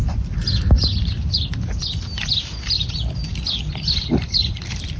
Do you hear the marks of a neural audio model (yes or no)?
no